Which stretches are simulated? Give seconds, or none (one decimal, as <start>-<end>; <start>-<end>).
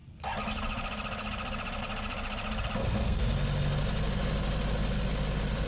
2.8-3.3